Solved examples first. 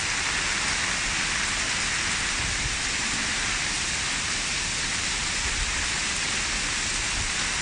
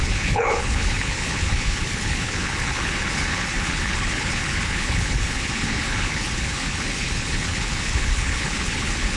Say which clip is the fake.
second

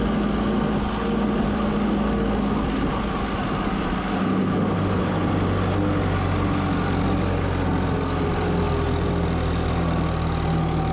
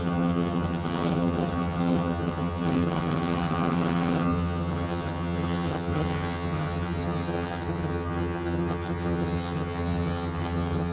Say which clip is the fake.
second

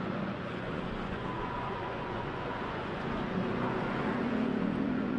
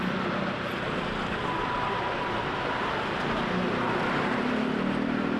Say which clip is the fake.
first